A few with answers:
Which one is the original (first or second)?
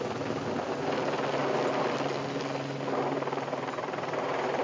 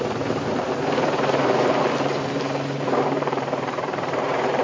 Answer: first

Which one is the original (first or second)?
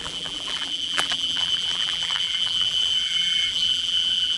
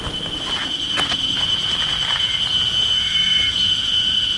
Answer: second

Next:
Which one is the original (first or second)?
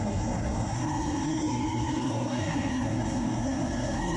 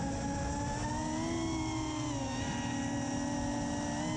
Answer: second